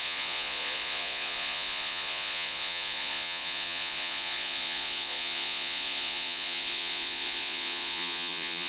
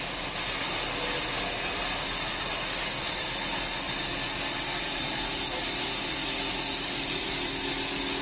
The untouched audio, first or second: second